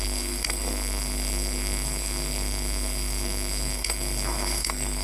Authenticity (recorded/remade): remade